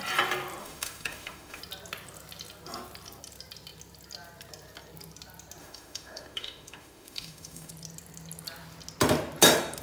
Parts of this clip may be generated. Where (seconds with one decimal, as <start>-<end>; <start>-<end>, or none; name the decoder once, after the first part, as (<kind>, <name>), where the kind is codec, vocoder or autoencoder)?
0.6-1.6 (autoencoder, DAC-VAE); 5.6-7.7